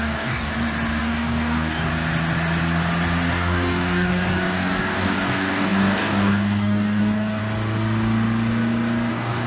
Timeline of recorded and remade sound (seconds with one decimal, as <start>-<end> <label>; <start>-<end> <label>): 0.0-0.5 remade; 0.5-1.0 recorded; 1.0-1.9 remade; 1.9-3.3 recorded; 3.3-7.4 remade; 7.4-9.1 recorded; 9.1-9.5 remade

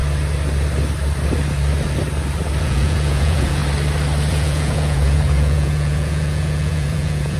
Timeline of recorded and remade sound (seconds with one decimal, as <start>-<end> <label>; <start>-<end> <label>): 0.0-2.6 recorded; 2.6-3.6 remade; 3.6-4.3 recorded; 4.3-7.4 remade

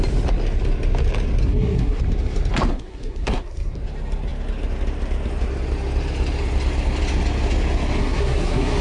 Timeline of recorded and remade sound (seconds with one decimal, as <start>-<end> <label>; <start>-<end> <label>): 0.0-1.4 recorded; 1.4-2.0 remade; 2.0-2.7 recorded; 2.7-3.8 remade; 3.8-8.0 recorded; 8.0-8.8 remade

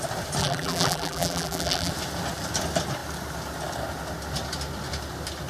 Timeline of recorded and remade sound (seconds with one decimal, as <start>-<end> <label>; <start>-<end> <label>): 0.0-0.4 recorded; 0.4-1.9 remade; 1.9-5.5 recorded

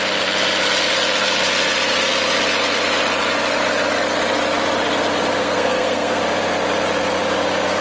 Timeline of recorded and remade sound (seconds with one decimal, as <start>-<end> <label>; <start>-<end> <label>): 0.0-5.4 recorded; 5.4-6.2 remade; 6.2-7.8 recorded

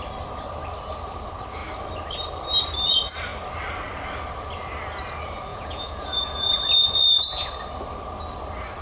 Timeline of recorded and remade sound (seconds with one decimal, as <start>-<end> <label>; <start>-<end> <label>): 0.0-5.5 recorded; 5.5-7.5 remade; 7.5-8.8 recorded

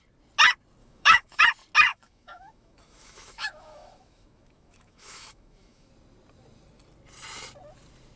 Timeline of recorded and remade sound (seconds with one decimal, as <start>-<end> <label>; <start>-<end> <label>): 0.0-0.8 recorded; 0.8-1.4 remade; 1.4-1.9 recorded; 1.9-5.9 remade; 5.9-8.2 recorded